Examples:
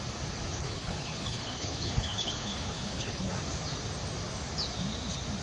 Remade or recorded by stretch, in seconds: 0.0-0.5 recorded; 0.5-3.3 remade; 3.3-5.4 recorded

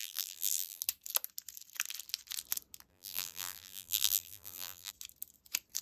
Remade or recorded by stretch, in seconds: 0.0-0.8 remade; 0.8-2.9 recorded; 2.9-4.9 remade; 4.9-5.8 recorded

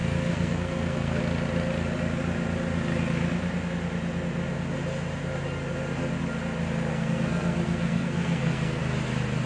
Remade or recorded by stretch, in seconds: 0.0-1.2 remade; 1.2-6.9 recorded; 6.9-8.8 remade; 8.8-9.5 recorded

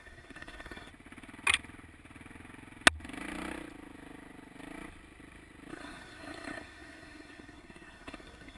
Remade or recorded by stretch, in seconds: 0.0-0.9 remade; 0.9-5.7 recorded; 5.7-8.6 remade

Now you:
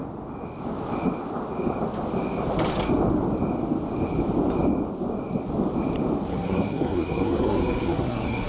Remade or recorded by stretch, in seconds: 0.0-6.3 recorded; 6.3-8.5 remade